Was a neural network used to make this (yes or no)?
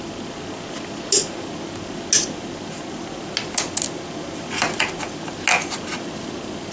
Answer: no